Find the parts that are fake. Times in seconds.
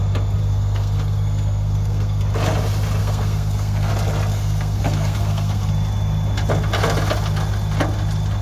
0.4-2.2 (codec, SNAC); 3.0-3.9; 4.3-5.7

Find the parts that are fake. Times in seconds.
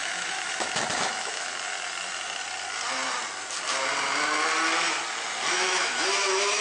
0.0-1.5 (autoencoder, DAC-VAE); 5.5-6.6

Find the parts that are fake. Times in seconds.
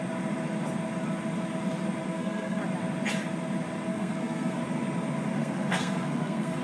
2.1-2.6 (codec, SNAC); 3.9-4.6; 5.4-6.6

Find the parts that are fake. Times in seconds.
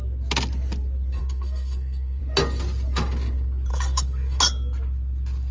1.2-2.2 (codec, SNAC); 3.7-4.4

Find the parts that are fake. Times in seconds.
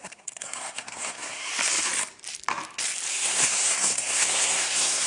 0.0-1.5 (codec, SNAC); 3.1-5.1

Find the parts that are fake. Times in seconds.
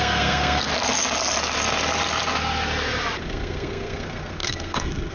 0.0-0.7 (codec, SNAC); 3.2-5.1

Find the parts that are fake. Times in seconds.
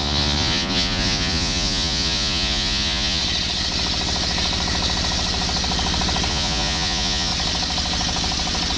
0.0-3.2 (vocoder, Vocos); 6.3-7.3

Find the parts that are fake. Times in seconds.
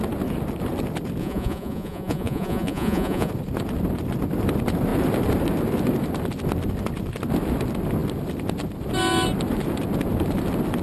1.2-3.3 (vocoder, Vocos)